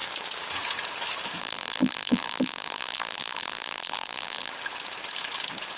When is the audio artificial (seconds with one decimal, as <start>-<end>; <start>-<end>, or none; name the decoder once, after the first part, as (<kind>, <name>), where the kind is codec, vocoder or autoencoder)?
1.4-4.5 (vocoder, BigVGAN v2)